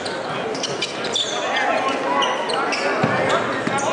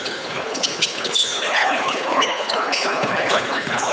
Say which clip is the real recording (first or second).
first